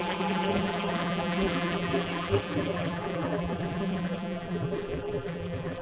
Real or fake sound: fake